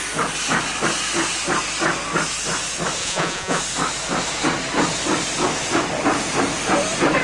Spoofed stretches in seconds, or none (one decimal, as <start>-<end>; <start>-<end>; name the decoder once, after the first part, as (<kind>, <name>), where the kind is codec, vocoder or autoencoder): 3.0-3.6 (vocoder, Vocos)